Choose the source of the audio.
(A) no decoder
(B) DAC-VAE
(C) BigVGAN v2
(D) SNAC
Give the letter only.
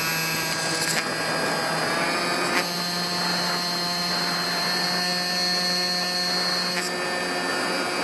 A